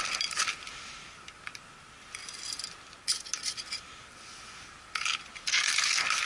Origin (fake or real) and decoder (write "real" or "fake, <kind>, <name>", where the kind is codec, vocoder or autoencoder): real